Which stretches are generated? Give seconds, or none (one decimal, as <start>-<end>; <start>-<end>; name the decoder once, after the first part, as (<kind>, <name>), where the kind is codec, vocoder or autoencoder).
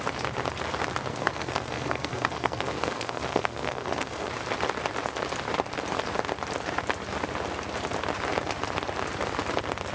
1.1-4.3 (codec, SNAC)